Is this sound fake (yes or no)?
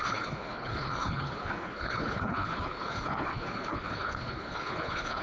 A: yes